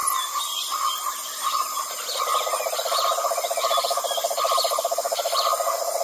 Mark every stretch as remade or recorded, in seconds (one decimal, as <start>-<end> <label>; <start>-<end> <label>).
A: 0.0-6.0 recorded